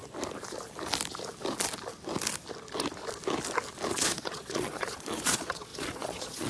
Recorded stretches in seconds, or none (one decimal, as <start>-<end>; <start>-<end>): 0.0-3.9